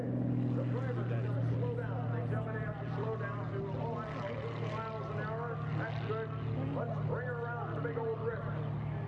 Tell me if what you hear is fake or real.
real